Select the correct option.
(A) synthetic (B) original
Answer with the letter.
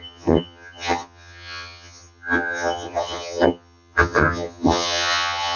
A